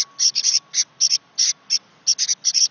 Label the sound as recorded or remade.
recorded